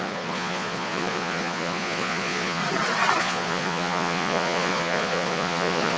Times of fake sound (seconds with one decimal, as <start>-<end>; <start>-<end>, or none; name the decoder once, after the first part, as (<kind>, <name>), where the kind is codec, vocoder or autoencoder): 0.0-2.6 (vocoder, Vocos); 3.2-6.0